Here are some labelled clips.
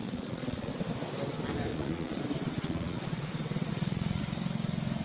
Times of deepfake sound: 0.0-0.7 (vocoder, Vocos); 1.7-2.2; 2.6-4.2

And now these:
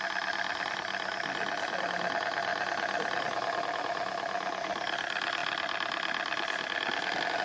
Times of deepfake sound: none

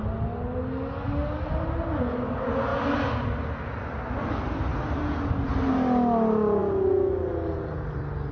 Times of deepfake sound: none

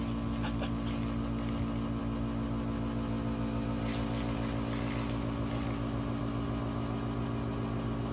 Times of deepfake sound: none

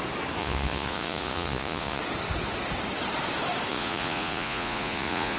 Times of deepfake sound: 0.4-2.0 (vocoder, Vocos); 3.7-5.4

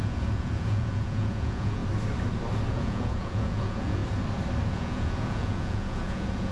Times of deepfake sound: 0.0-1.8 (vocoder, Vocos); 2.7-4.0; 4.7-6.5

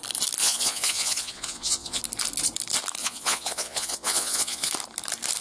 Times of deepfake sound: 0.4-2.0 (vocoder, Vocos); 3.0-4.7

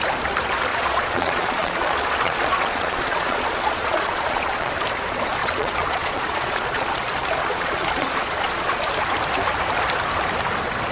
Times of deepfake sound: 0.7-4.7 (vocoder, Vocos); 5.4-6.9; 7.4-8.8